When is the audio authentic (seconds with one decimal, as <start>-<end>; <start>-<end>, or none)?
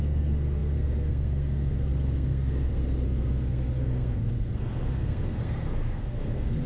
none